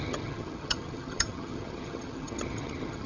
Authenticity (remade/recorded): remade